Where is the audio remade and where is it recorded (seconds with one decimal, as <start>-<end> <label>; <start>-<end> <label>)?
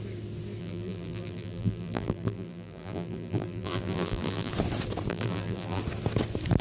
0.0-0.6 recorded; 0.6-4.5 remade; 4.5-5.1 recorded; 5.1-5.8 remade; 5.8-6.6 recorded